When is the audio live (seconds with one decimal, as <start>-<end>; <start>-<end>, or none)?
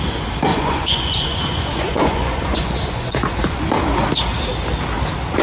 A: 0.0-0.5; 3.6-5.4